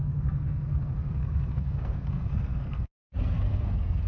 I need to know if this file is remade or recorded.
remade